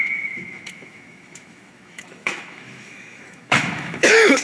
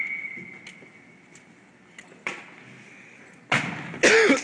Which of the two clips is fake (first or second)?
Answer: first